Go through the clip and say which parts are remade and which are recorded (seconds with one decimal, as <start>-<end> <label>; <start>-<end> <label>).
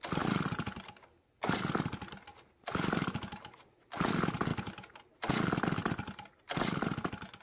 0.0-2.3 recorded; 2.3-4.1 remade; 4.1-7.4 recorded